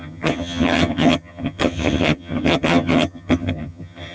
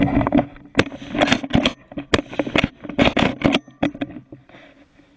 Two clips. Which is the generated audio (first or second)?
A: first